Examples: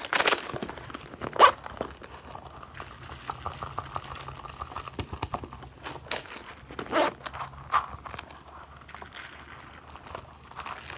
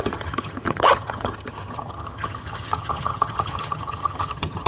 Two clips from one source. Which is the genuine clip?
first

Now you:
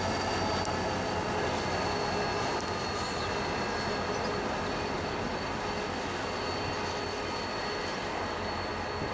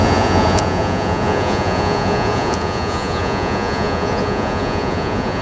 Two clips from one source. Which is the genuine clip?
first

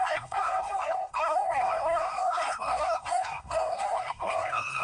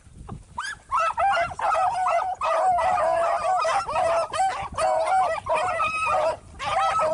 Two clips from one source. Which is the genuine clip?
second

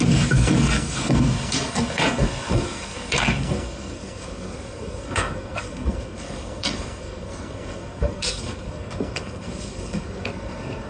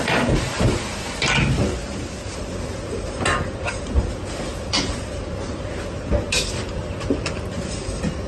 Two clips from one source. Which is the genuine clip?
second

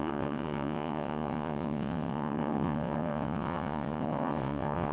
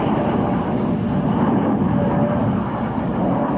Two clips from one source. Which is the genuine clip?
second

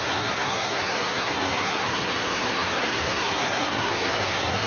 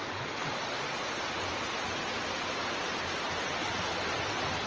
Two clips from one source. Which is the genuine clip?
second